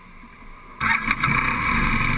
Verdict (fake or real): real